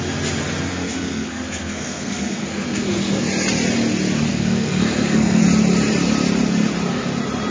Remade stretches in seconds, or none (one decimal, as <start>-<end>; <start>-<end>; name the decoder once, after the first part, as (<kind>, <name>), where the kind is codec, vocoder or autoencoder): 0.7-3.3 (codec, SNAC); 4.3-5.4